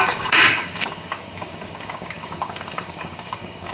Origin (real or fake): fake